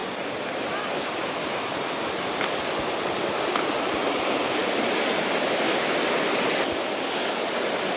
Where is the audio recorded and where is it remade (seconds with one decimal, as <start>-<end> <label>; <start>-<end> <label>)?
0.0-4.0 remade; 4.0-8.0 recorded